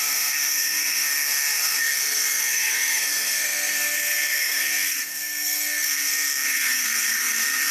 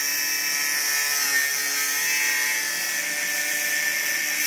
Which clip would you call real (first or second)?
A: second